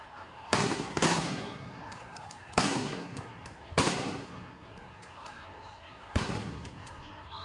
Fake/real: fake